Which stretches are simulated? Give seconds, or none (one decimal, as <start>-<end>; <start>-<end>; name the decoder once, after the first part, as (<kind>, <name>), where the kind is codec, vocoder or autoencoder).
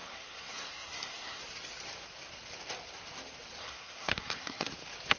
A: 0.0-1.4 (codec, SNAC); 3.6-4.7